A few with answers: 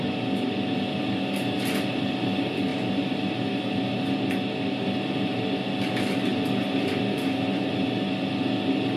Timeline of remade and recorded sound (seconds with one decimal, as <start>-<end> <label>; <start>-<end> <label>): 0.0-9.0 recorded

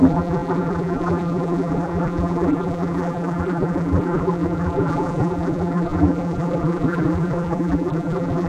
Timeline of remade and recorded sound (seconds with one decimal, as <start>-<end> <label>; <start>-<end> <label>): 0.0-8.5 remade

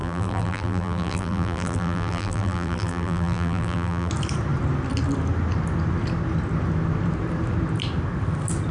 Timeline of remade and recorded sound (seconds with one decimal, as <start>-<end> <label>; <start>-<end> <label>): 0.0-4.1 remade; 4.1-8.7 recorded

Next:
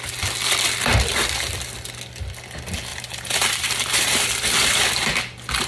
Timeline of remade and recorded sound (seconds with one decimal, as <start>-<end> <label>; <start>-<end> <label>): 0.0-2.9 recorded; 2.9-4.3 remade; 4.3-5.7 recorded

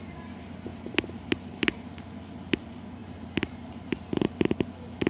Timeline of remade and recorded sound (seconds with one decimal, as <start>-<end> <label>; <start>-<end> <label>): 0.0-3.0 recorded; 3.0-3.9 remade; 3.9-5.1 recorded

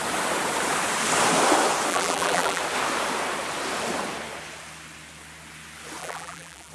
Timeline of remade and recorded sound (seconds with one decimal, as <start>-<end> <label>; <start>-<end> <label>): 0.0-1.9 recorded; 1.9-2.6 remade; 2.6-6.0 recorded; 6.0-6.7 remade